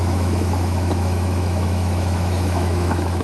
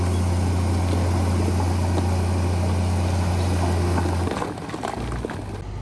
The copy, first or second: first